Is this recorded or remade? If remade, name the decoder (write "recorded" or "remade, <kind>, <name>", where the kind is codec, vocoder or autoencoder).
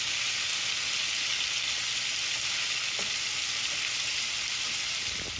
recorded